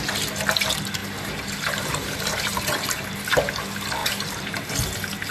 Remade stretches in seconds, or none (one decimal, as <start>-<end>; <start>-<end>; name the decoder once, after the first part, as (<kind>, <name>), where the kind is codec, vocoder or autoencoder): 1.0-3.1 (vocoder, BigVGAN v2); 4.0-4.7